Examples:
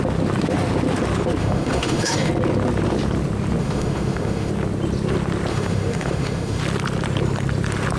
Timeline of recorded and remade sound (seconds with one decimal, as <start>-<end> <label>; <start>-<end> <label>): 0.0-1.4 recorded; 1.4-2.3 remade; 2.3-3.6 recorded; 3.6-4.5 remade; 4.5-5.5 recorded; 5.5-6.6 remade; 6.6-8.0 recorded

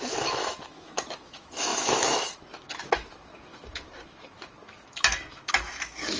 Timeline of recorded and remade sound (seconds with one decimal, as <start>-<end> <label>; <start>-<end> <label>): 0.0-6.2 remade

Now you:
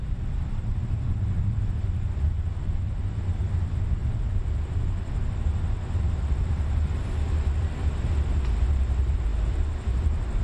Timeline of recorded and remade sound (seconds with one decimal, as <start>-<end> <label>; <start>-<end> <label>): 0.0-10.4 recorded

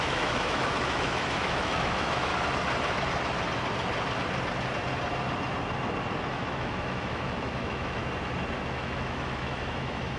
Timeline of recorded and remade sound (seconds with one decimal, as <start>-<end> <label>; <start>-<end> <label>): 0.0-2.3 remade; 2.3-6.3 recorded; 6.3-8.0 remade; 8.0-8.7 recorded; 8.7-10.2 remade

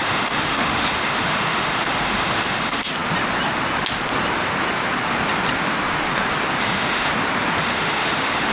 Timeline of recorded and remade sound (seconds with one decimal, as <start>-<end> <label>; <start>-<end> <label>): 0.0-2.9 remade; 2.9-6.6 recorded; 6.6-7.1 remade; 7.1-7.6 recorded; 7.6-8.5 remade

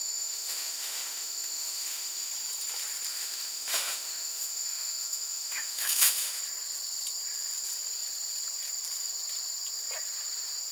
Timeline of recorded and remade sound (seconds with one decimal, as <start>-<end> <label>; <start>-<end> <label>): 0.0-2.3 remade; 2.3-3.1 recorded; 3.1-6.4 remade; 6.4-10.7 recorded

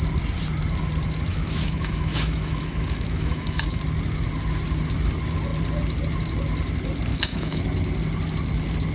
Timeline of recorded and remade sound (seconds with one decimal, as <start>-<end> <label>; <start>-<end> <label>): 0.0-1.3 recorded; 1.3-3.8 remade; 3.8-7.1 recorded; 7.1-7.6 remade; 7.6-8.9 recorded

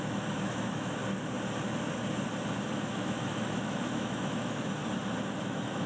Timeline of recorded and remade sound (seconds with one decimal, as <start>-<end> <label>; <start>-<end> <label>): 0.0-1.0 remade; 1.0-2.9 recorded; 2.9-4.8 remade; 4.8-5.4 recorded; 5.4-5.9 remade